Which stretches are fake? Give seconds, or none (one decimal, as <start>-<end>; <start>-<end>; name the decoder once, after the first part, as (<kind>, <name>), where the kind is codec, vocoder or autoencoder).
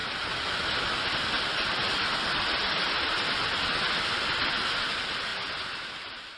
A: none